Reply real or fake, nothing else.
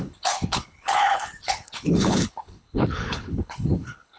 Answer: fake